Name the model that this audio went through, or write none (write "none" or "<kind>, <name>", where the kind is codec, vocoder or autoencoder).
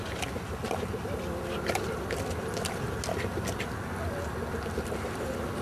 none